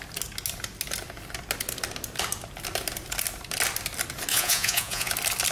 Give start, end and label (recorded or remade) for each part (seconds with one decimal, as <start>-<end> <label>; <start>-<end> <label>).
0.0-4.3 recorded; 4.3-5.1 remade; 5.1-5.5 recorded